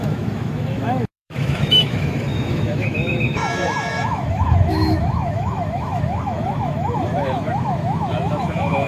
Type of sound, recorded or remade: remade